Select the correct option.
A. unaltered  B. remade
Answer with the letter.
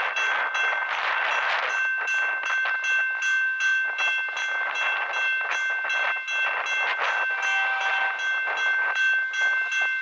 A